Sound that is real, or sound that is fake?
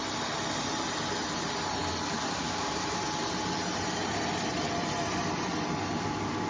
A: real